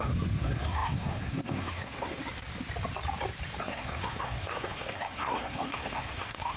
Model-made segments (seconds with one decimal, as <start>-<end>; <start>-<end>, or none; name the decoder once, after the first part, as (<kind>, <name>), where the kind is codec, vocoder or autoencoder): 0.0-2.2 (codec, SNAC); 3.6-6.6